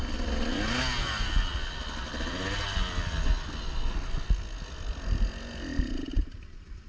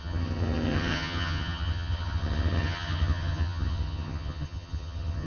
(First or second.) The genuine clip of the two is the first